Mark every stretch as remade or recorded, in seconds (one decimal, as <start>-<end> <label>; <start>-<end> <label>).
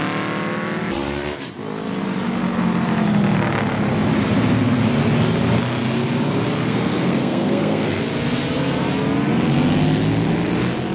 0.0-6.7 recorded; 6.7-8.0 remade; 8.0-10.9 recorded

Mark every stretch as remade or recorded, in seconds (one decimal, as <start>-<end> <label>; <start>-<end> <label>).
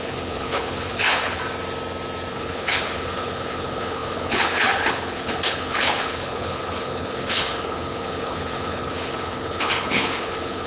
0.0-1.4 remade; 1.4-2.3 recorded; 2.3-10.7 remade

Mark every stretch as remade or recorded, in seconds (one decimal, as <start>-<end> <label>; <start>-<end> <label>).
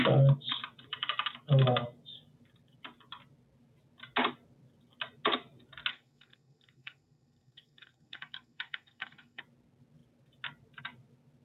0.0-5.9 recorded; 5.9-9.4 remade; 9.4-11.4 recorded